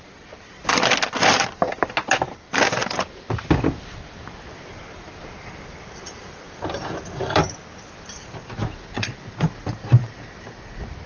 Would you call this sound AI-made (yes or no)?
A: no